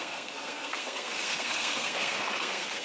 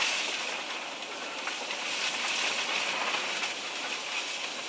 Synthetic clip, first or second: first